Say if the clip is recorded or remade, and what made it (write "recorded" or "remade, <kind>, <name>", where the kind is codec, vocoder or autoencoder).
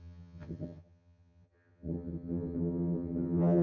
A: remade, vocoder, HiFi-GAN